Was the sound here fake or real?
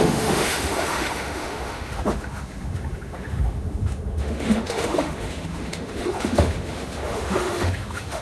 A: fake